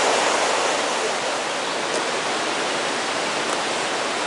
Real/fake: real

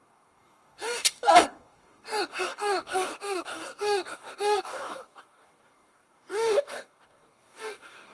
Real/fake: fake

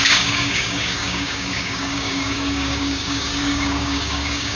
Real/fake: fake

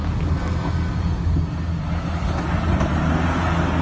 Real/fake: real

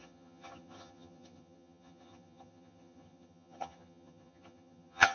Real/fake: fake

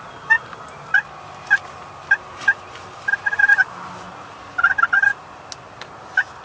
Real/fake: real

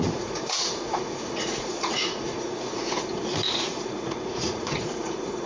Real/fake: fake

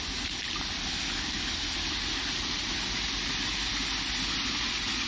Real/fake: real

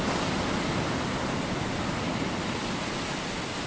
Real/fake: real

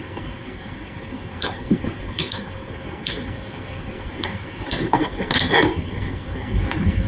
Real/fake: fake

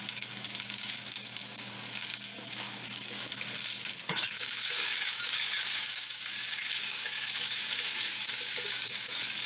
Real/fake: fake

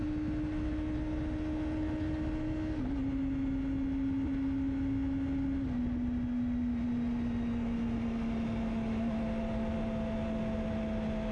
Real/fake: real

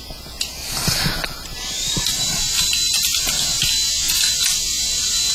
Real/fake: real